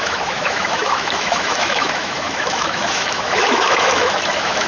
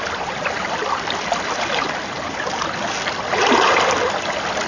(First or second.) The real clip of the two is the second